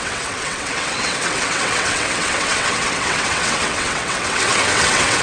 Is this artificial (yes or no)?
yes